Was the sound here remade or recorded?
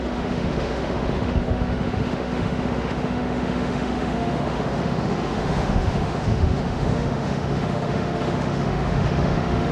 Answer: remade